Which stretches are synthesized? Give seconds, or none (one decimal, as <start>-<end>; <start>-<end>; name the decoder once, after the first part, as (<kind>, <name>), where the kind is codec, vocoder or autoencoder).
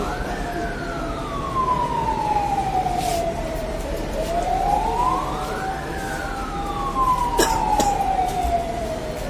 3.1-4.8 (vocoder, BigVGAN v2)